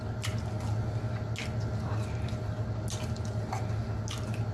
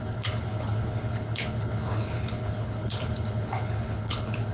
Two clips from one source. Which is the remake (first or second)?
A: second